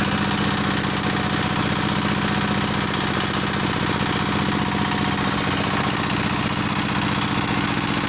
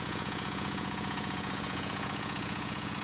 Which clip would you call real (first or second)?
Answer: first